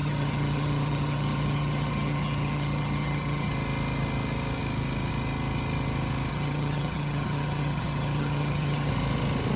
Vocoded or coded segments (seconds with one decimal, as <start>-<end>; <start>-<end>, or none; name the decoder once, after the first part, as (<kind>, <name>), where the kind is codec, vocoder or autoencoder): 0.0-3.5 (vocoder, HiFi-GAN); 6.3-8.9